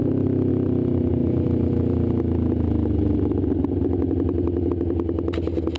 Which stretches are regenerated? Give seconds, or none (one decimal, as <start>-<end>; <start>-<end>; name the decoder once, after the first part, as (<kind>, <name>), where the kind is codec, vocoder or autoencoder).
none

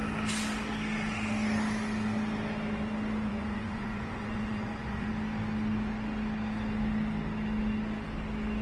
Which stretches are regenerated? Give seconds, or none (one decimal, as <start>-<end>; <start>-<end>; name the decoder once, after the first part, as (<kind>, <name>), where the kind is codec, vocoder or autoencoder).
3.3-5.1 (vocoder, Vocos)